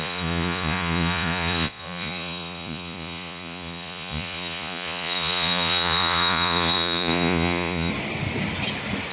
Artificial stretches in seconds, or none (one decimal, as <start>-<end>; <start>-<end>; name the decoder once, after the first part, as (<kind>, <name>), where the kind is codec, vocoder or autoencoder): 0.0-7.9 (vocoder, Vocos)